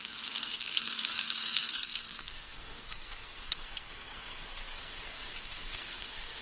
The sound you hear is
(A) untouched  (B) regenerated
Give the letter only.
B